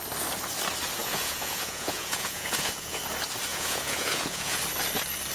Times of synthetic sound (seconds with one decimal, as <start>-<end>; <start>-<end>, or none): 1.0-3.0; 3.5-4.6